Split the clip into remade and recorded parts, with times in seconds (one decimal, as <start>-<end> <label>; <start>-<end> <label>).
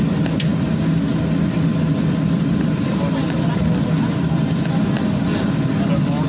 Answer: 0.0-6.3 recorded